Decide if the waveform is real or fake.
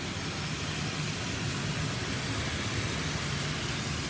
real